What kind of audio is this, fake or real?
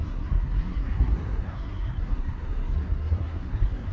fake